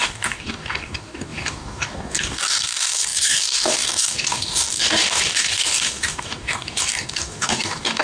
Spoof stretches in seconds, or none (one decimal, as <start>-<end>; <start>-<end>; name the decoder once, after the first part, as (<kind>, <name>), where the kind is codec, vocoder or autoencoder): 0.0-8.0 (codec, DAC)